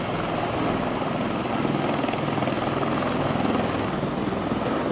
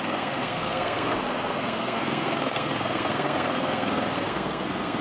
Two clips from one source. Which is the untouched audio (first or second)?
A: first